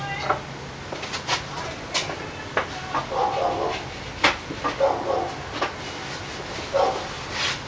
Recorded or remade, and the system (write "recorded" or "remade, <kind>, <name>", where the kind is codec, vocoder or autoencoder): recorded